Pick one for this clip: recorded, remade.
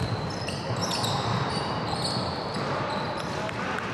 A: recorded